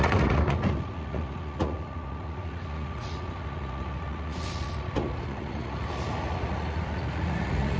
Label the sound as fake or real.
fake